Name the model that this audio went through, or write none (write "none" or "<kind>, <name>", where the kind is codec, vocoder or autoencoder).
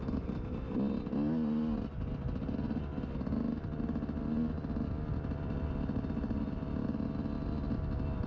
none